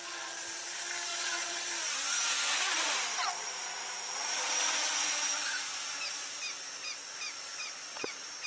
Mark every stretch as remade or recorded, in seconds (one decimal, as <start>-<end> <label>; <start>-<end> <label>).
0.0-1.1 recorded; 1.1-1.7 remade; 1.7-8.5 recorded